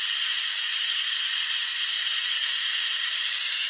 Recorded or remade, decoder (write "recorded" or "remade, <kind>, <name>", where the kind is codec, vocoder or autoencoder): remade, vocoder, BigVGAN v2